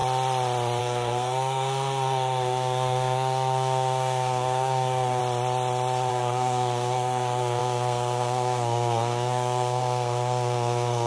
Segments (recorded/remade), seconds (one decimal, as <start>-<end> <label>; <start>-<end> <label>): 0.0-0.8 recorded; 0.8-5.2 remade; 5.2-6.1 recorded; 6.1-11.1 remade

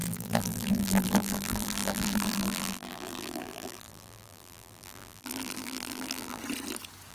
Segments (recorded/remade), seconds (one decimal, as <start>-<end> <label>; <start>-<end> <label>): 0.0-6.4 remade; 6.4-7.1 recorded